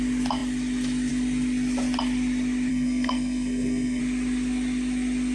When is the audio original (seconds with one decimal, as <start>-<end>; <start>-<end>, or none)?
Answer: 0.0-2.7; 4.0-5.3